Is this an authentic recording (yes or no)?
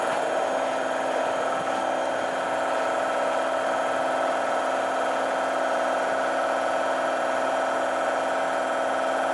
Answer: yes